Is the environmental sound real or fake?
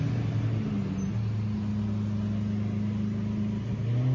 real